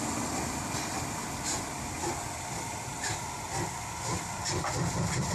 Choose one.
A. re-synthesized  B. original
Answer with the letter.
B